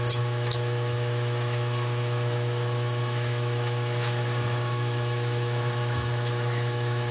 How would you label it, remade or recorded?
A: remade